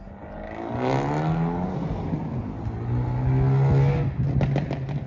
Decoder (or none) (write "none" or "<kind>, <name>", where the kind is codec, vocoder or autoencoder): none